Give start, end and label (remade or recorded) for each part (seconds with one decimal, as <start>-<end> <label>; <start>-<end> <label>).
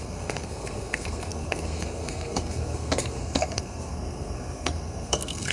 0.0-5.5 remade